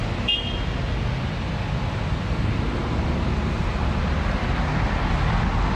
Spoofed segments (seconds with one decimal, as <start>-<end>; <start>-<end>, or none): none